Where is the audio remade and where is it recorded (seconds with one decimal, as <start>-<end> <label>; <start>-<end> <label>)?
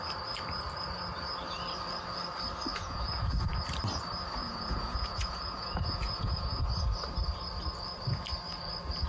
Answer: 0.0-2.7 recorded; 2.7-3.6 remade; 3.6-4.4 recorded; 4.4-6.7 remade; 6.7-9.1 recorded